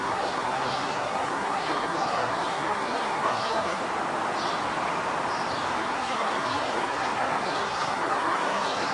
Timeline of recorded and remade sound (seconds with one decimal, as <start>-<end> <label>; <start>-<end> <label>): 0.0-3.8 remade; 3.8-5.7 recorded; 5.7-8.9 remade